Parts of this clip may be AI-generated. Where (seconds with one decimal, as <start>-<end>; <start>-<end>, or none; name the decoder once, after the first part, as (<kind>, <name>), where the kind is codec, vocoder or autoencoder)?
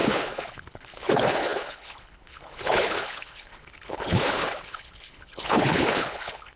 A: 0.0-6.6 (codec, HILCodec)